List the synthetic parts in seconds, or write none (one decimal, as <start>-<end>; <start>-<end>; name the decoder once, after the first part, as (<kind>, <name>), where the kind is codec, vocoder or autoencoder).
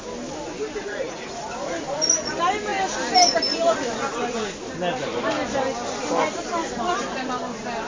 0.8-1.4 (vocoder, Vocos)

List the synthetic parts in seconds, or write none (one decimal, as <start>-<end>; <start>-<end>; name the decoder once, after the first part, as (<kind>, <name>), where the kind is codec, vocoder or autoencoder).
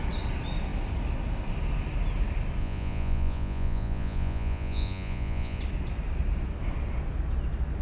2.6-5.6 (vocoder, Vocos)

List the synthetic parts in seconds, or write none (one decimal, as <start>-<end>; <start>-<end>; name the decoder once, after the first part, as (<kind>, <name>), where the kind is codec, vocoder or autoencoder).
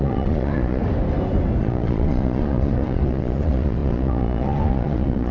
0.0-0.8 (vocoder, Vocos); 1.6-5.3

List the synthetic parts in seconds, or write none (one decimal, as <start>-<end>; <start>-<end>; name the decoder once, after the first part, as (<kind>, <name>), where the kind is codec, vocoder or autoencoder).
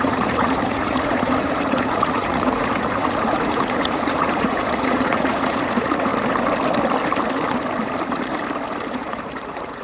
0.0-6.1 (vocoder, Vocos); 8.9-9.8